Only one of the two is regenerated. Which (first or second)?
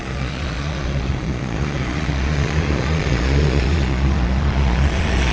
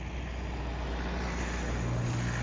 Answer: first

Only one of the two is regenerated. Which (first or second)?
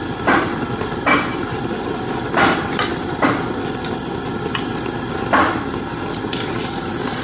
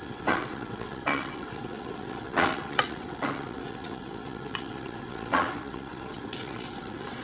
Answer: second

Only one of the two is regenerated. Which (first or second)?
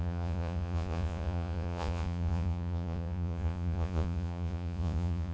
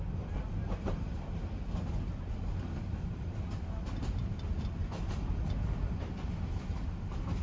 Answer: first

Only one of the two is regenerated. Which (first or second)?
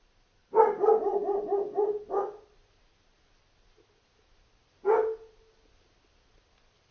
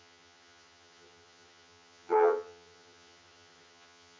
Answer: second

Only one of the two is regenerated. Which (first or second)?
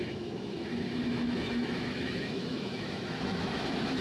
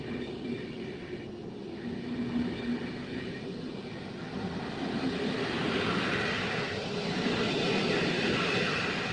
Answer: first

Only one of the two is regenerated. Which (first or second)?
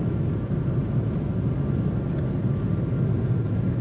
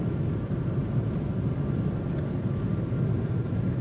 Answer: second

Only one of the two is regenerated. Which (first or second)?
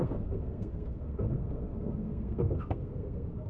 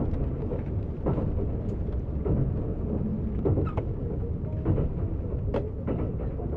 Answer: first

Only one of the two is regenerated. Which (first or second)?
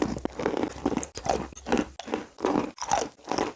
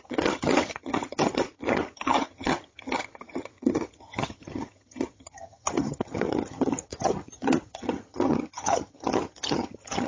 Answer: second